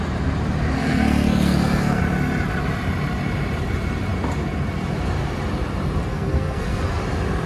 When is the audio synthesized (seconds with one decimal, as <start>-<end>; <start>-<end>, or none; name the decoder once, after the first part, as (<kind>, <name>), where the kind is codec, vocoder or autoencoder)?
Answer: 0.8-2.0 (codec, SNAC); 6.1-7.0